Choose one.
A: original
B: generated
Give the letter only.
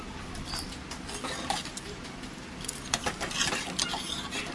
A